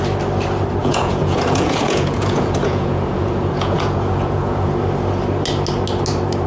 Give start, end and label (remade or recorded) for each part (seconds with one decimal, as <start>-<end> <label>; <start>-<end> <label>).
0.0-0.8 recorded; 0.8-4.7 remade; 4.7-6.5 recorded